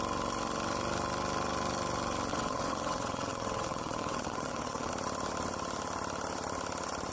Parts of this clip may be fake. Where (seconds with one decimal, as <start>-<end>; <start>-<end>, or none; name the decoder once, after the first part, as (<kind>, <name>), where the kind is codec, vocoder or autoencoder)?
2.3-4.9 (vocoder, WaveNeXt)